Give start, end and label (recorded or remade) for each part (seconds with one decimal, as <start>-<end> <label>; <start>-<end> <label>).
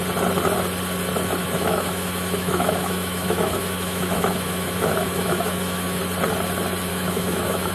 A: 0.0-1.4 recorded; 1.4-6.0 remade; 6.0-6.9 recorded; 6.9-7.7 remade